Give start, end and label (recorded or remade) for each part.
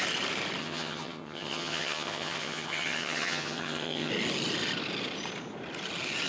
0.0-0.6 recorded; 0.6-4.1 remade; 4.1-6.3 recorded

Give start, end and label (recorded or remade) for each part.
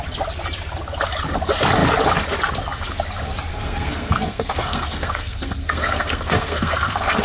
0.0-3.5 recorded; 3.5-7.2 remade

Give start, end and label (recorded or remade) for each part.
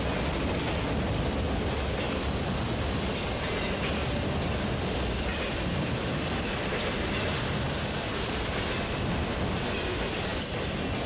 0.0-11.1 recorded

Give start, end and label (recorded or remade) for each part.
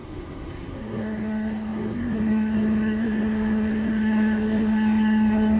0.0-5.6 remade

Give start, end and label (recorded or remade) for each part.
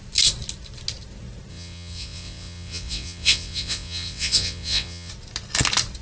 0.0-1.5 recorded; 1.5-5.1 remade; 5.1-6.0 recorded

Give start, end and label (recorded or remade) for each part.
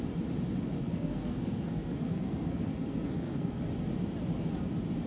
0.0-0.8 recorded; 0.8-3.6 remade; 3.6-5.1 recorded